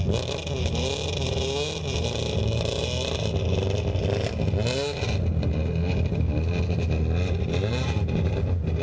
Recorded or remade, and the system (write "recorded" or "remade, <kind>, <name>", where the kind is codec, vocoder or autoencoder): recorded